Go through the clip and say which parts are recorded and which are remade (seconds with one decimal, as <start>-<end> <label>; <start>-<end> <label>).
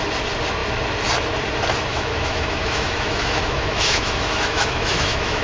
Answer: 0.0-1.9 recorded; 1.9-5.4 remade